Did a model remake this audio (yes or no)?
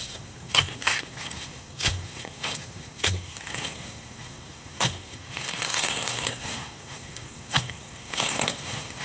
yes